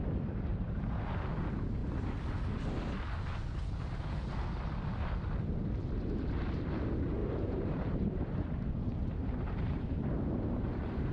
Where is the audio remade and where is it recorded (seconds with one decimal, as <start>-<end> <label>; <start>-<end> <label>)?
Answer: 0.0-0.5 recorded; 0.5-1.0 remade; 1.0-7.2 recorded; 7.2-11.1 remade

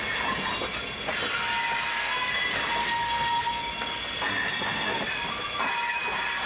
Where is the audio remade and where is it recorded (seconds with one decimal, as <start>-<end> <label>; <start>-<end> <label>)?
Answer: 0.0-1.9 recorded; 1.9-2.4 remade; 2.4-2.8 recorded; 2.8-3.6 remade; 3.6-6.5 recorded

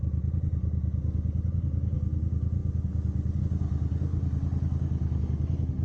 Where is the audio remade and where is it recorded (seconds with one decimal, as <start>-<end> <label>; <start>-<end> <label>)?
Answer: 0.0-5.8 recorded

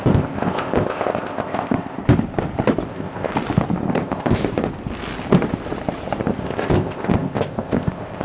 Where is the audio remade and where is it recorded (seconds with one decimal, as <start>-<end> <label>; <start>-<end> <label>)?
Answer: 0.0-2.0 remade; 2.0-2.9 recorded; 2.9-3.3 remade; 3.3-3.9 recorded; 3.9-4.4 remade; 4.4-6.4 recorded; 6.4-8.2 remade